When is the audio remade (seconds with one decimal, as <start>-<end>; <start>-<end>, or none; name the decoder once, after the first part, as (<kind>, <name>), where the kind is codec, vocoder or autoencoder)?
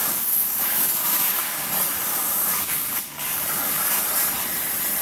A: 0.0-1.7 (codec, DAC); 2.1-4.0